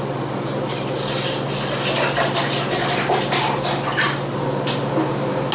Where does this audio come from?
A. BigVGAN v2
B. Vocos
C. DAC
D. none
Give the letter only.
D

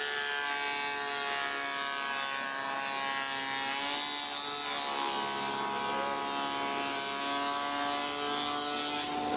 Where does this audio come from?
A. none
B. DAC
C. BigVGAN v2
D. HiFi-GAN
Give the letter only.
A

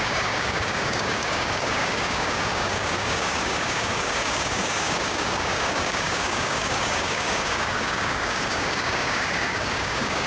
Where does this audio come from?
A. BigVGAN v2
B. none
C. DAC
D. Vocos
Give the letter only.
C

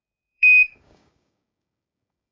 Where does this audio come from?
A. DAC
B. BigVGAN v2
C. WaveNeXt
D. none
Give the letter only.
A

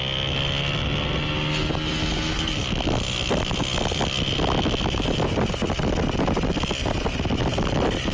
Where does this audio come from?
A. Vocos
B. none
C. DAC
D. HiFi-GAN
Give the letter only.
B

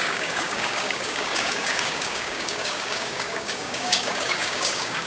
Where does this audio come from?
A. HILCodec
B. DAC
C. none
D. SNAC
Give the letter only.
B